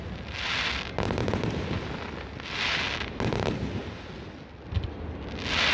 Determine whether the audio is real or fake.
real